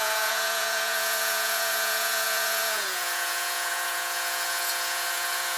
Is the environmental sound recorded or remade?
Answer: remade